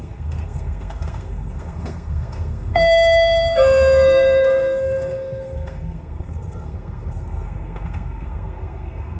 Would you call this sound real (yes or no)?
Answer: no